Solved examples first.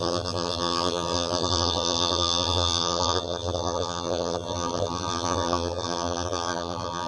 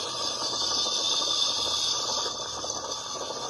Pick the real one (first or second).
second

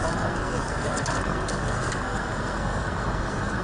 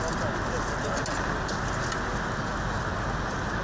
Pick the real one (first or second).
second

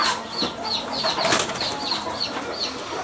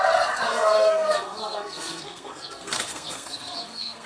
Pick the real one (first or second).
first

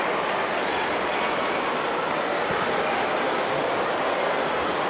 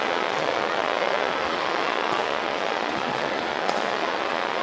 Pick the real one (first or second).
first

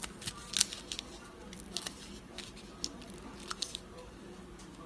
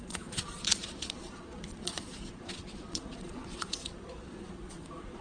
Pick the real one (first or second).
first